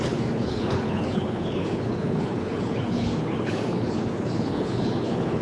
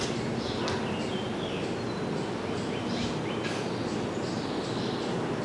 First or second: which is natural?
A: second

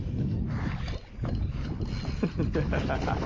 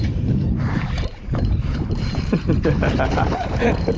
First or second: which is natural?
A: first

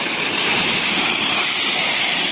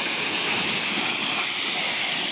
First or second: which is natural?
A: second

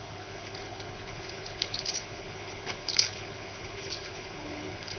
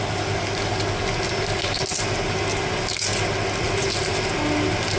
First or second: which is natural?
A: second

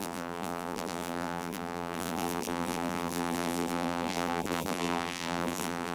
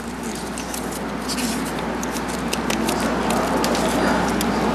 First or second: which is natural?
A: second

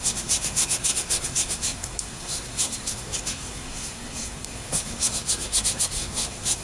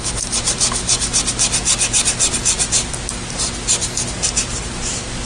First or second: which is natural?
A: second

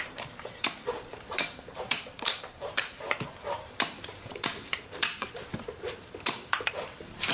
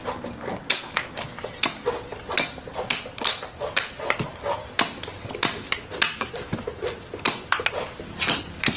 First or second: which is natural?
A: second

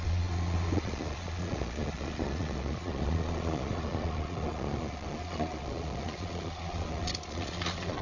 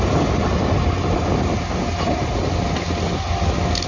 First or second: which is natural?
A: second